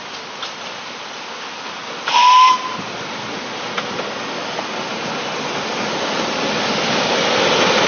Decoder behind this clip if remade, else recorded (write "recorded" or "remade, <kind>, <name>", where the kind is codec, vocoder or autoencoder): recorded